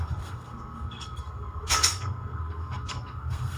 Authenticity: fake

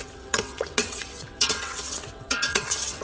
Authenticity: fake